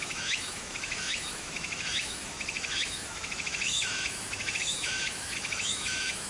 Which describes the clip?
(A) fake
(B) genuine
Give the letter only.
A